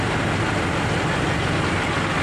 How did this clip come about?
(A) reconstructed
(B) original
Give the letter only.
B